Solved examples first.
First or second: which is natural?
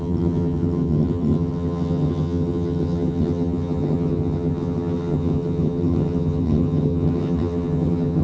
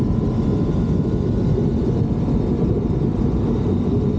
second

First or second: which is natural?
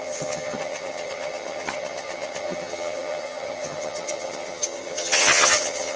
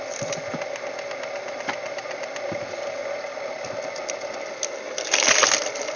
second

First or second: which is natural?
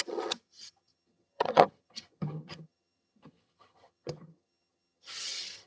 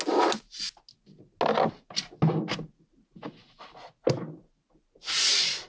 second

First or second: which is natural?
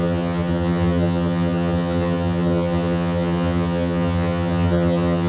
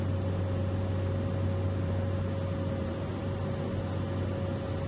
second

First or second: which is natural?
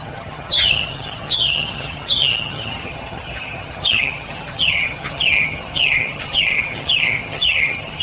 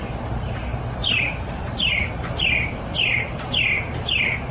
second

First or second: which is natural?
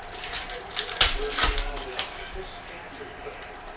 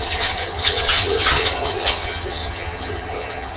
first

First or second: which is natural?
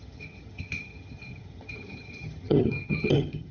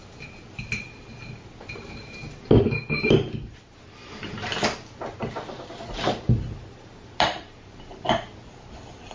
second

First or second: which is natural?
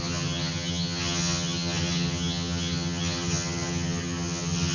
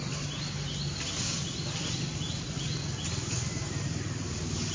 second